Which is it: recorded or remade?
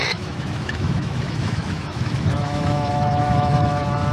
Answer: remade